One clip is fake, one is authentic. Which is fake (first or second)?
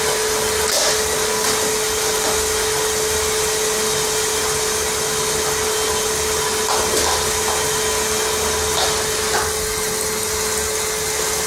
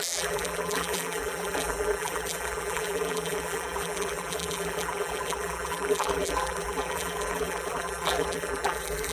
second